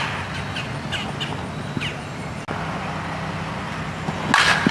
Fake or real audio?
real